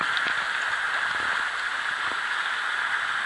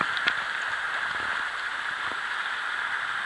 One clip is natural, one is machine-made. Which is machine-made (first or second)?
second